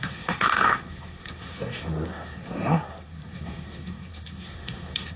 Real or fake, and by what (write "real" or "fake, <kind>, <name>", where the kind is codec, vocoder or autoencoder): fake, codec, SNAC